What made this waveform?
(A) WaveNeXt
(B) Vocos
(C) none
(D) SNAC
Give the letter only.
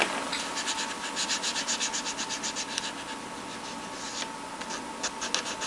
C